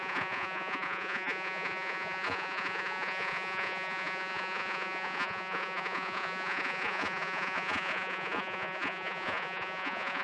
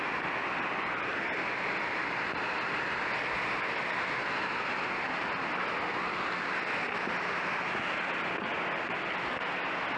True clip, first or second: second